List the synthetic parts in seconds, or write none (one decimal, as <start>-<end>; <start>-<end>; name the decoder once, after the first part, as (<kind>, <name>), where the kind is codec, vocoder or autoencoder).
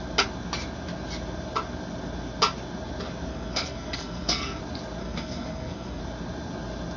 3.3-4.6 (codec, SNAC); 5.0-6.0